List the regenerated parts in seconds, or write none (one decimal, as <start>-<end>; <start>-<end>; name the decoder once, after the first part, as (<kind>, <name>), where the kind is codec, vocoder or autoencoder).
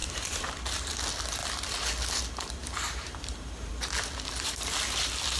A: 0.0-0.5 (vocoder, BigVGAN v2); 2.6-3.7